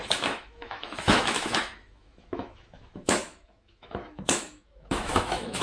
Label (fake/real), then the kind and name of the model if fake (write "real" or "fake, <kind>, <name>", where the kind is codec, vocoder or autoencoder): fake, autoencoder, DAC-VAE